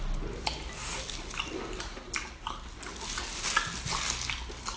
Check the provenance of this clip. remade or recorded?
recorded